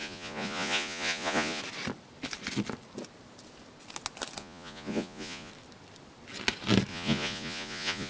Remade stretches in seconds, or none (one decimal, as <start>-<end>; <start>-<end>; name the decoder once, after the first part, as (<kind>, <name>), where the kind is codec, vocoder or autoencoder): 0.0-1.6 (vocoder, Vocos); 4.4-5.5; 6.9-8.1